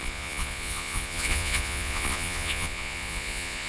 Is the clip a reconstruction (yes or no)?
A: yes